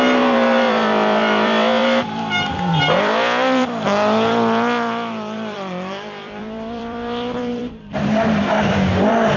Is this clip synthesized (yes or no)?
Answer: yes